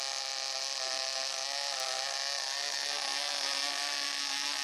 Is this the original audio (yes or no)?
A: yes